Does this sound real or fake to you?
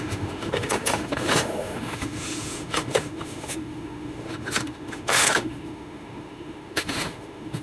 fake